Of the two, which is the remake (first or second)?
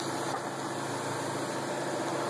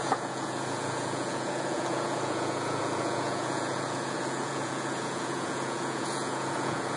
second